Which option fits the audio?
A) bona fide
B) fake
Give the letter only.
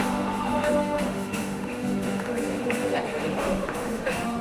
B